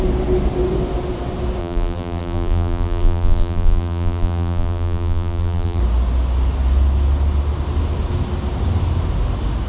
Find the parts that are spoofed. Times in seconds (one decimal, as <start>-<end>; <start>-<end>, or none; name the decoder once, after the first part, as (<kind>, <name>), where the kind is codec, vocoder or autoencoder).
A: 1.6-5.8 (vocoder, BigVGAN v2)